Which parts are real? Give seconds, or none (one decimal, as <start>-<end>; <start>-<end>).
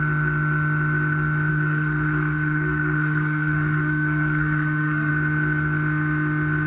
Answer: 0.0-1.5; 5.1-6.7